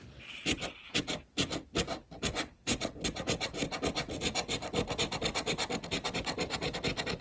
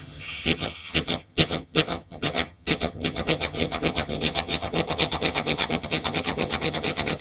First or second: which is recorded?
first